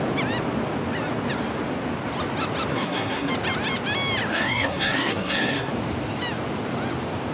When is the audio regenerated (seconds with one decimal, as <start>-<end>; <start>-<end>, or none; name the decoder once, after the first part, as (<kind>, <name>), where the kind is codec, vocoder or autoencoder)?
2.7-3.3 (codec, SNAC); 4.3-5.7